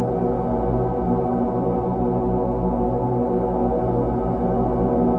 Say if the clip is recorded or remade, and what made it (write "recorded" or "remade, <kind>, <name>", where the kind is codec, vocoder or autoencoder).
recorded